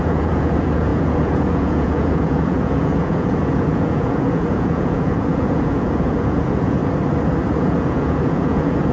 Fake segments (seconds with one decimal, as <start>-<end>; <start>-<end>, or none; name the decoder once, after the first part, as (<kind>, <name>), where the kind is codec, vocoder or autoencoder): 0.0-6.8 (vocoder, Vocos); 7.6-8.9

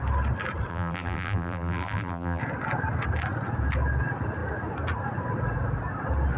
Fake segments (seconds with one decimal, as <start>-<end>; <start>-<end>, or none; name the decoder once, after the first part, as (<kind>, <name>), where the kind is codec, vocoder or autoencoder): 0.7-2.4 (vocoder, BigVGAN v2)

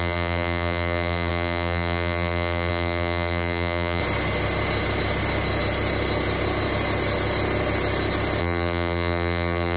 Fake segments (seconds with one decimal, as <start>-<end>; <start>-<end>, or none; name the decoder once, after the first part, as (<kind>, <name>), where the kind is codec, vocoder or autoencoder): 0.0-4.0 (vocoder, BigVGAN v2); 8.4-9.8

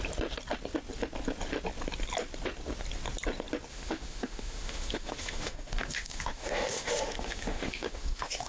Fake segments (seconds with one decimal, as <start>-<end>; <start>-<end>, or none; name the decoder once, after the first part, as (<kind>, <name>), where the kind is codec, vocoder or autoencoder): 3.7-8.5 (autoencoder, DAC-VAE)

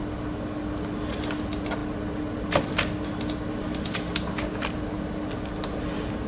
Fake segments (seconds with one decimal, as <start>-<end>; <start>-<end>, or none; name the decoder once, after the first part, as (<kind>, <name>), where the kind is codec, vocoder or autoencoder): none

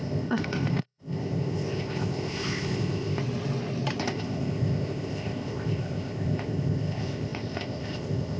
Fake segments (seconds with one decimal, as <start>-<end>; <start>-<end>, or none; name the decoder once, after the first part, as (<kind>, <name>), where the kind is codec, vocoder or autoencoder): 0.0-3.2 (codec, ZipCodec); 4.0-8.4